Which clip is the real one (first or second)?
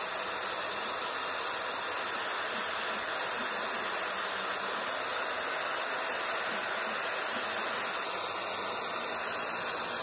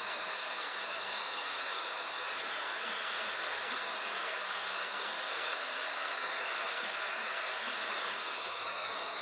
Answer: first